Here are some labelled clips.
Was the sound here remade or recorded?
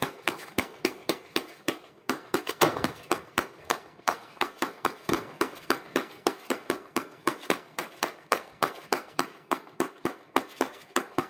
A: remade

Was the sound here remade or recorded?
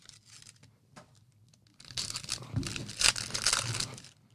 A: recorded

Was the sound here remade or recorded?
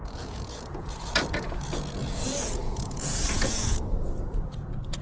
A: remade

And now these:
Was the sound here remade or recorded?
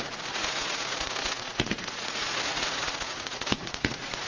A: remade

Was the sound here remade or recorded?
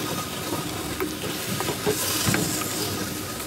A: recorded